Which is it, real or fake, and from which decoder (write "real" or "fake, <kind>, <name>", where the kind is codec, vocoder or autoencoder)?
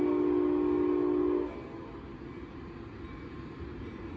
real